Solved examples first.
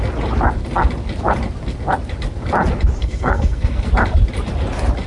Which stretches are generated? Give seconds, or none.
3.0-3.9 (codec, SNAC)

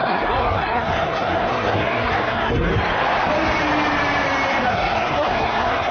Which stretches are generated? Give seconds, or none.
0.0-2.7 (codec, SNAC); 4.7-5.9

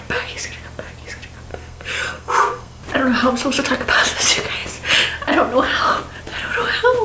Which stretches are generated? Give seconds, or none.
1.5-2.8 (codec, SNAC)

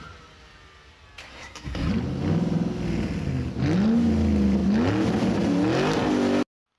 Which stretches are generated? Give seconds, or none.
1.3-1.9 (codec, SNAC)

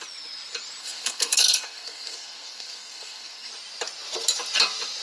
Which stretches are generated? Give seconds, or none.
0.8-3.5 (codec, SNAC)